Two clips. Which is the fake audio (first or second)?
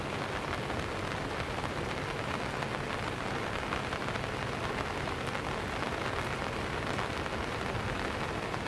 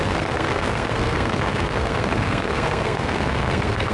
second